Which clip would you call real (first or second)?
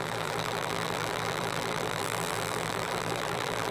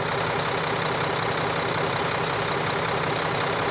second